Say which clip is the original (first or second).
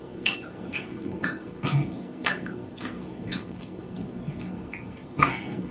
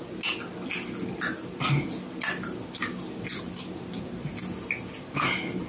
second